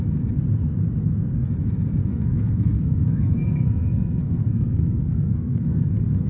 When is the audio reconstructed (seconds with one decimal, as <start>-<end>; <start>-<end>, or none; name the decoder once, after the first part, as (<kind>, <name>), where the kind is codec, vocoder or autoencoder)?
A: 1.0-1.5 (codec, SNAC); 2.1-6.3